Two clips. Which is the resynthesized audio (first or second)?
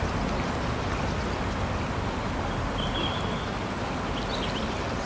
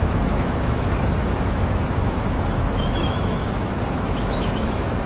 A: second